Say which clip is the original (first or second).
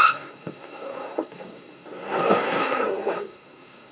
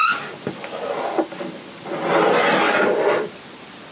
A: second